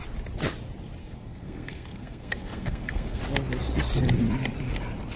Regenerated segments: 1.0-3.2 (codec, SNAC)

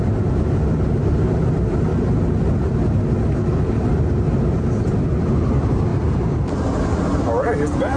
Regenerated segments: 5.9-6.6 (vocoder, BigVGAN v2)

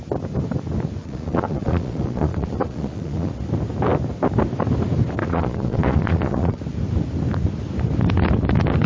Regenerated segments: 1.0-3.3 (vocoder, Vocos); 5.2-6.6

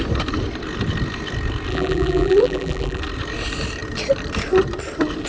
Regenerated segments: 1.7-3.0 (vocoder, BigVGAN v2)